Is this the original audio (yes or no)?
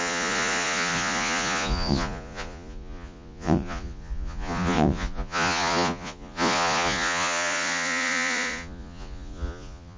no